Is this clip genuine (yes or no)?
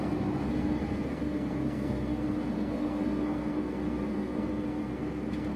no